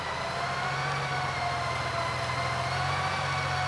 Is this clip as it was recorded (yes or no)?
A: yes